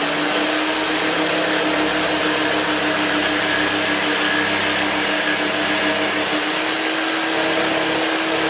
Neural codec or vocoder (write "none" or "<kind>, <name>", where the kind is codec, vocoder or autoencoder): none